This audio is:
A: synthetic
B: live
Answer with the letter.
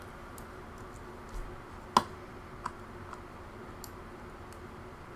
B